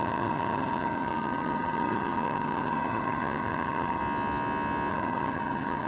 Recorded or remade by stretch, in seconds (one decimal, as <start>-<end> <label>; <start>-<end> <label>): 0.0-4.0 remade; 4.0-4.9 recorded; 4.9-5.9 remade